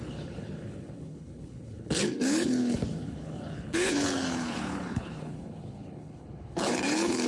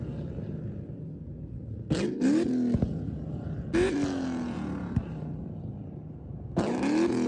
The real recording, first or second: second